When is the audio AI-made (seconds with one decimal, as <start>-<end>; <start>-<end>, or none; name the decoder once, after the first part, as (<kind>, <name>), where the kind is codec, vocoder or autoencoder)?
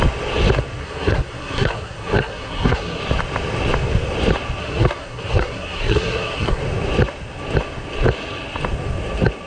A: 0.8-3.0 (codec, SNAC); 4.6-6.6